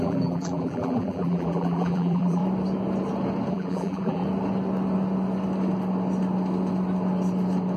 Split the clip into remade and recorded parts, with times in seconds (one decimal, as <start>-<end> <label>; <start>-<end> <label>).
0.0-2.4 remade; 2.4-3.5 recorded; 3.5-4.2 remade; 4.2-7.8 recorded